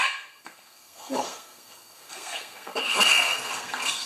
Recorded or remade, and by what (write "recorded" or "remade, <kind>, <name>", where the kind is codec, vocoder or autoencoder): remade, codec, SNAC